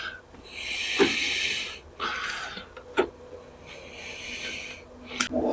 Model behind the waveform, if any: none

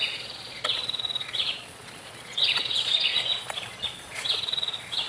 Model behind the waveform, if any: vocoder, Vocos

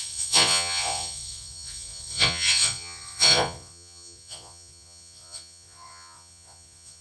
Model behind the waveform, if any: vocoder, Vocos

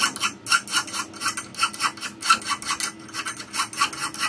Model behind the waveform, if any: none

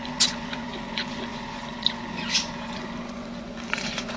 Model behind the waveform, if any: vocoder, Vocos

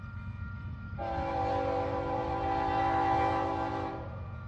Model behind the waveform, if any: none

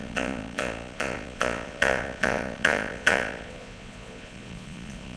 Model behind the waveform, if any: vocoder, Vocos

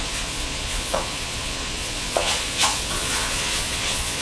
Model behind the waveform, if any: vocoder, Vocos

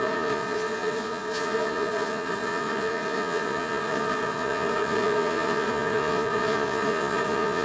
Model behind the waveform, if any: vocoder, Vocos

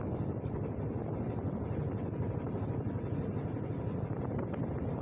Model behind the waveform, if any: none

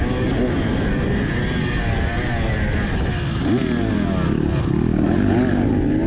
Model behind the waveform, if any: none